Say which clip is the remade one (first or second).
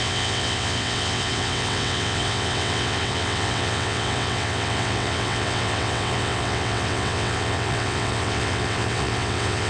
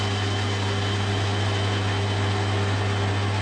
first